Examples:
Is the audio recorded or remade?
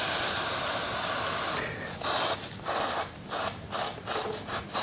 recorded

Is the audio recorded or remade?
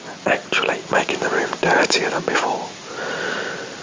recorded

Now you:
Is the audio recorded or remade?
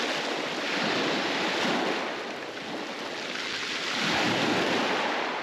recorded